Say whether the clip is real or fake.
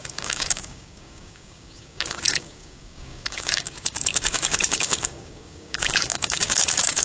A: fake